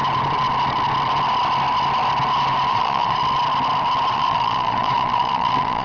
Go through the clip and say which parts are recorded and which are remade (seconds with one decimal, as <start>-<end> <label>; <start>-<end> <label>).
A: 0.0-2.7 recorded; 2.7-3.2 remade; 3.2-4.1 recorded; 4.1-5.8 remade